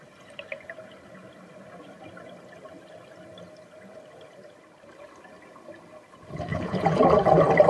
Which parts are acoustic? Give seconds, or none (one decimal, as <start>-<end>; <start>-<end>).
0.0-6.5; 7.0-7.7